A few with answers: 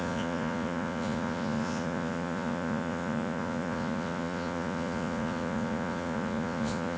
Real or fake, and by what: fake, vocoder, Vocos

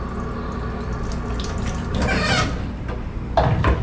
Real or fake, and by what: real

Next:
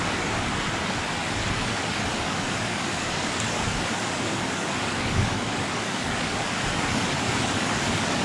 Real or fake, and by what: fake, codec, DAC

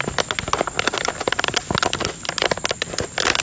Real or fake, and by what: real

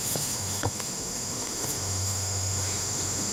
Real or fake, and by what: fake, autoencoder, DAC-VAE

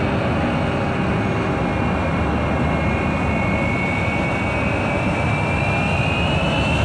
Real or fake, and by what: real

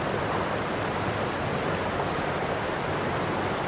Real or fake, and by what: real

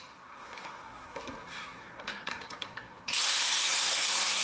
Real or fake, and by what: fake, codec, SNAC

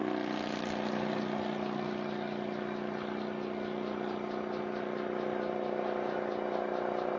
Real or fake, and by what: real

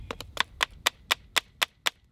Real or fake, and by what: real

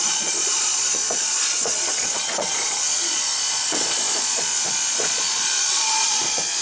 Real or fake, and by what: fake, vocoder, Vocos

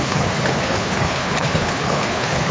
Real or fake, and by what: fake, codec, HILCodec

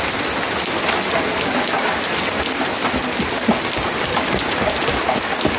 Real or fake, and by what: real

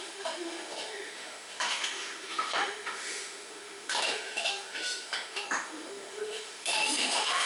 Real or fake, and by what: fake, autoencoder, DAC-VAE